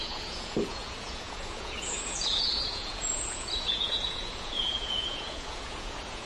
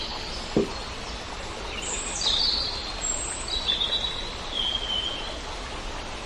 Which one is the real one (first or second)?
second